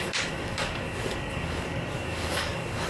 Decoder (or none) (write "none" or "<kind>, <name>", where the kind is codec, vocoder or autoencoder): codec, DAC